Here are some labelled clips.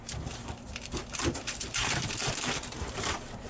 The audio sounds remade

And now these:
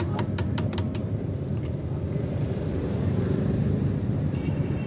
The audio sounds remade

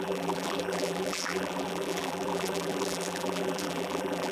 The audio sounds remade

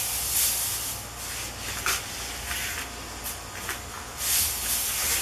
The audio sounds recorded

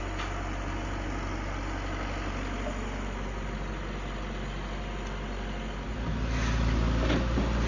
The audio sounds recorded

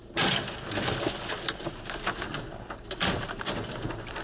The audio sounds recorded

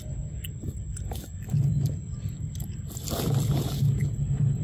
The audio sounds recorded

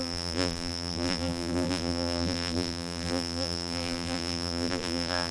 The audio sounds remade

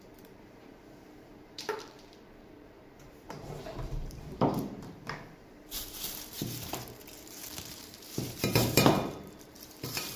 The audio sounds remade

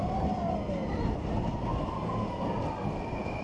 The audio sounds recorded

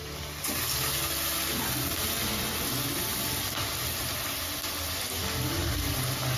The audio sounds recorded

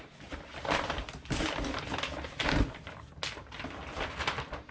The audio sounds remade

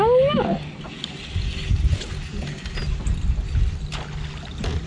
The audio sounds recorded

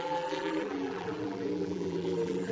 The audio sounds remade